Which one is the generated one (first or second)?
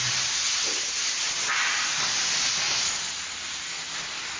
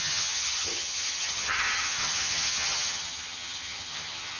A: second